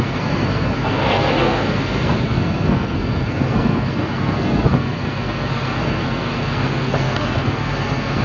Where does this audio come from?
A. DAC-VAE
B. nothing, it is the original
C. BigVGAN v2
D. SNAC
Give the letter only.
D